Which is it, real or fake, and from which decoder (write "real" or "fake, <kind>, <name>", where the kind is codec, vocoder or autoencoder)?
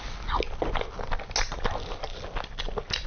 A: real